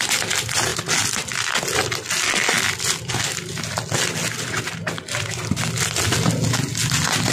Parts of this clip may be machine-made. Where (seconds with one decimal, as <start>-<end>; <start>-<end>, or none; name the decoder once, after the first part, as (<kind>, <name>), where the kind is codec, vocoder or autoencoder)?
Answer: none